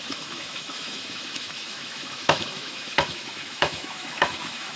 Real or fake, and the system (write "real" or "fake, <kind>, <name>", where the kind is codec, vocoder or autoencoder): fake, autoencoder, DAC-VAE